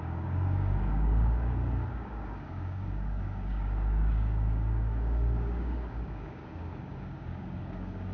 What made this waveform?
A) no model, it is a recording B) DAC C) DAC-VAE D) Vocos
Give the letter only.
B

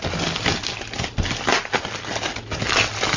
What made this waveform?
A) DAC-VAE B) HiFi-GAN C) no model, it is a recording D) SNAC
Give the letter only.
C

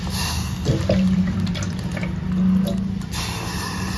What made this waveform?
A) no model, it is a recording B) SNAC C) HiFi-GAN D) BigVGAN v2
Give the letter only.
A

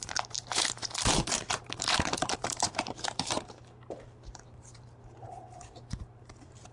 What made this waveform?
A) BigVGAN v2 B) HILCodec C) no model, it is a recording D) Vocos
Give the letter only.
A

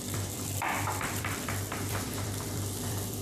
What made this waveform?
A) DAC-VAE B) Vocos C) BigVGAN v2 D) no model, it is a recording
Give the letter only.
C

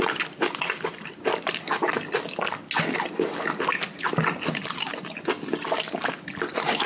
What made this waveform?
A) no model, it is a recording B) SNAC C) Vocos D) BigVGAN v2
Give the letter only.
A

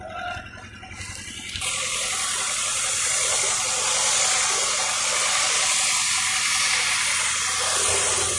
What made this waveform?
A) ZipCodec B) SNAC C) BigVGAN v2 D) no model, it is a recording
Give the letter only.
D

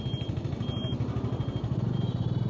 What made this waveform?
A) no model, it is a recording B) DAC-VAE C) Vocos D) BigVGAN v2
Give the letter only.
A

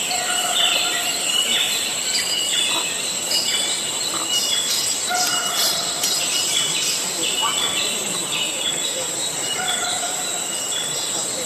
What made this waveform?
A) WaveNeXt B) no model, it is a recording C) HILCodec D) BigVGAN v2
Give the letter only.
D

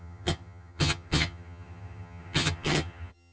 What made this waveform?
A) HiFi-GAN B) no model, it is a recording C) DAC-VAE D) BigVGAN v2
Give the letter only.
A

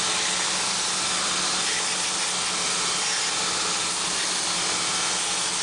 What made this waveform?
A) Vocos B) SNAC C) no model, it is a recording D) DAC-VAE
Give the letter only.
C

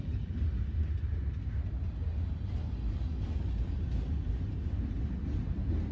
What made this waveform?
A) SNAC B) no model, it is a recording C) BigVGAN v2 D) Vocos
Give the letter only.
B